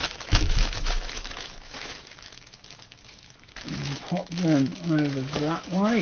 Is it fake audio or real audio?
fake